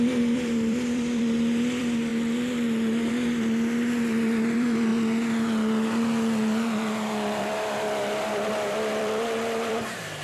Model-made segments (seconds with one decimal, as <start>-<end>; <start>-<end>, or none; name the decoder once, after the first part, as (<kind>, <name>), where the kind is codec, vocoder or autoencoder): 0.0-2.1 (vocoder, BigVGAN v2); 3.1-4.9; 7.4-10.2